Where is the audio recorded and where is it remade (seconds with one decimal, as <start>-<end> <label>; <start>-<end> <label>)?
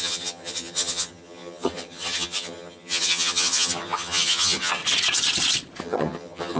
0.0-4.8 remade; 4.8-5.8 recorded; 5.8-6.6 remade